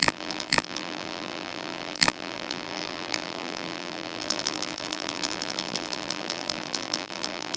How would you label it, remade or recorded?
remade